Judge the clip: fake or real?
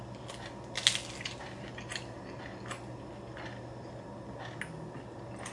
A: real